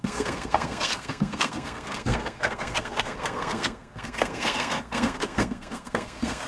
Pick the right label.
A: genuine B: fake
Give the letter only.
B